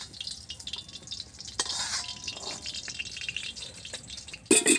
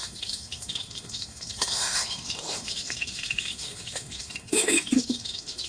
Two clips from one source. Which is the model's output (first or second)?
second